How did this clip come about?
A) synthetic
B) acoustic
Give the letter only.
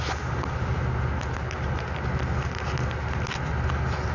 B